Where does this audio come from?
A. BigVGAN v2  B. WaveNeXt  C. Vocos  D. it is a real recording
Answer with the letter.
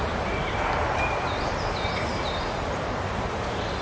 A